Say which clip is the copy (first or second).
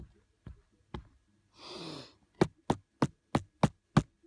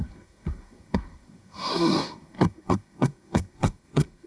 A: second